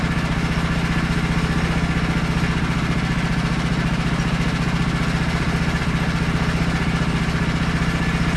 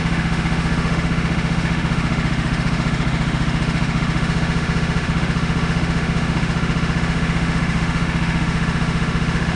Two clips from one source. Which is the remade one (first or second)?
second